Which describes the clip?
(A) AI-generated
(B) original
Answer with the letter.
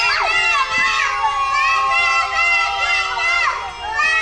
B